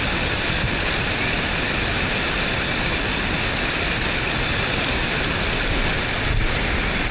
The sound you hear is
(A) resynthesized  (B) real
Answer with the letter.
B